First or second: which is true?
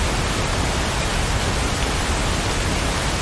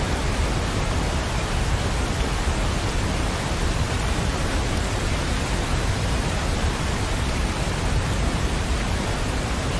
first